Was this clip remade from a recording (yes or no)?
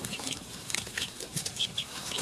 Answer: yes